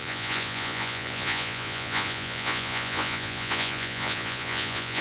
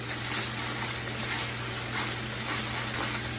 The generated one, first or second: first